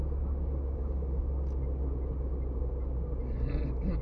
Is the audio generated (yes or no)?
no